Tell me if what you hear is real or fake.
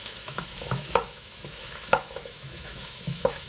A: fake